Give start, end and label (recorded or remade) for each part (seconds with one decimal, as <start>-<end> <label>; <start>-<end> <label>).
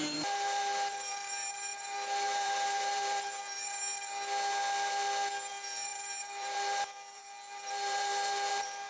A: 0.0-3.9 remade; 3.9-5.5 recorded; 5.5-8.9 remade